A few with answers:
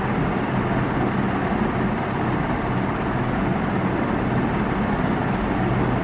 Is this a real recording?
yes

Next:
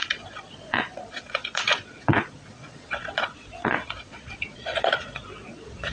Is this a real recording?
no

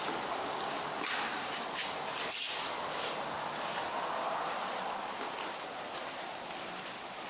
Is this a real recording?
yes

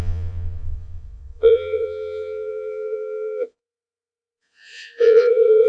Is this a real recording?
no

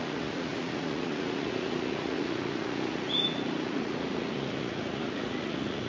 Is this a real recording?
no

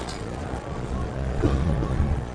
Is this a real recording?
no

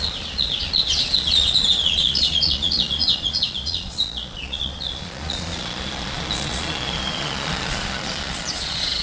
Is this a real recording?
no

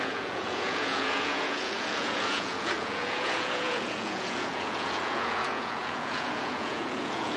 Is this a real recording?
no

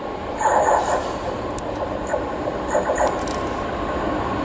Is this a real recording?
yes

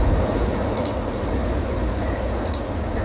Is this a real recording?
no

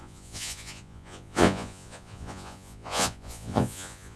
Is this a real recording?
no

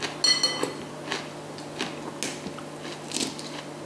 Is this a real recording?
yes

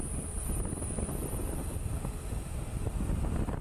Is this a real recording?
yes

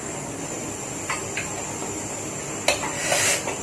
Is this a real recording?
yes